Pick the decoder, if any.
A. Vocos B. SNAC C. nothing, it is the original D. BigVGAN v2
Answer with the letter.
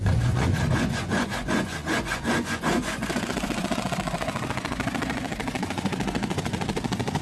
A